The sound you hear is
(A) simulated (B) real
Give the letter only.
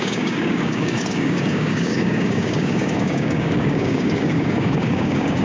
A